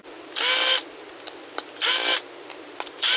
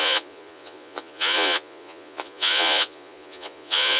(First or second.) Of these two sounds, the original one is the first